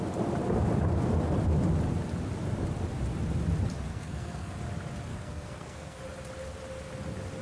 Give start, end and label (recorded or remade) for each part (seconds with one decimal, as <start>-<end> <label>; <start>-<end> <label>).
0.0-3.9 recorded; 3.9-4.6 remade; 4.6-5.1 recorded; 5.1-6.0 remade; 6.0-7.4 recorded